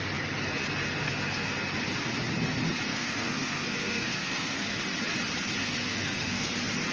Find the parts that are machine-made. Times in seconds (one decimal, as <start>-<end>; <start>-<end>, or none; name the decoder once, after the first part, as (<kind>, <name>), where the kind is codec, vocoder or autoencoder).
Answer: 1.0-1.5 (codec, SNAC); 2.9-4.8; 5.6-6.5